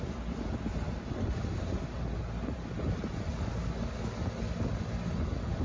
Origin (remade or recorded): recorded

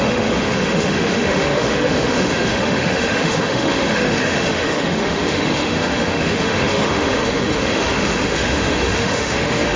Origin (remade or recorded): remade